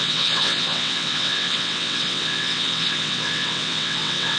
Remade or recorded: remade